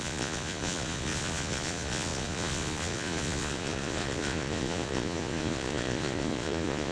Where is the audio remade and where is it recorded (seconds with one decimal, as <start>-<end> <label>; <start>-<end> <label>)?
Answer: 0.0-6.9 remade